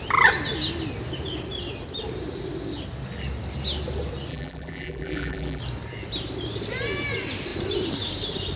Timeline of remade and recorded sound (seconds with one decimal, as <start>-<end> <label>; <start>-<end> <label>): 0.0-4.3 recorded; 4.3-5.6 remade; 5.6-8.6 recorded